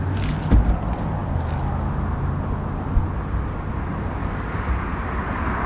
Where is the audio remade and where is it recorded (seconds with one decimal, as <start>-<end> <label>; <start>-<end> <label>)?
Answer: 0.0-4.2 recorded; 4.2-4.7 remade; 4.7-5.7 recorded